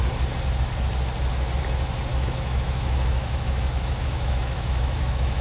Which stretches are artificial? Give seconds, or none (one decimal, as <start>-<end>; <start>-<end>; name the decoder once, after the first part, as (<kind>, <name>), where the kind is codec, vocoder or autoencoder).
2.1-5.4 (autoencoder, DAC-VAE)